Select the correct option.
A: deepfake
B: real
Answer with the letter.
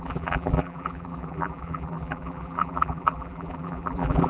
A